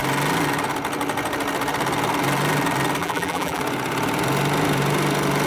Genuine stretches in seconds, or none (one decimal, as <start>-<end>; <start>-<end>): 0.0-3.0; 3.6-5.5